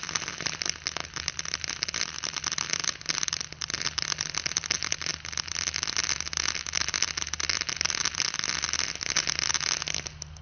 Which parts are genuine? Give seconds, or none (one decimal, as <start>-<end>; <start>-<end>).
0.0-10.4